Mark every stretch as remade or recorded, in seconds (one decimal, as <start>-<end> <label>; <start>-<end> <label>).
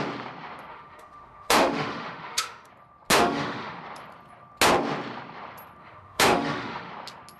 0.0-0.7 recorded; 0.7-2.7 remade; 2.7-3.1 recorded; 3.1-3.8 remade; 3.8-5.8 recorded; 5.8-6.9 remade; 6.9-7.4 recorded